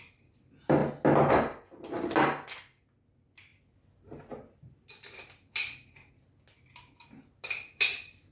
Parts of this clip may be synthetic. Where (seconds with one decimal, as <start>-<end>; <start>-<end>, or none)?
none